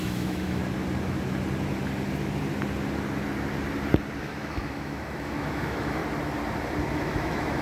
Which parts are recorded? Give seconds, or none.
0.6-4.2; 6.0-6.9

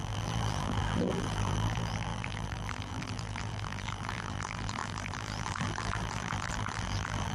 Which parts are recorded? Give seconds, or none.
none

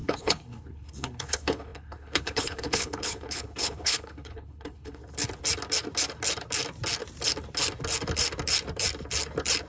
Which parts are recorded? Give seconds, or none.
5.0-9.7

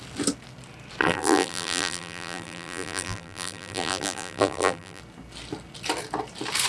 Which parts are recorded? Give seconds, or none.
0.0-1.0; 5.0-6.7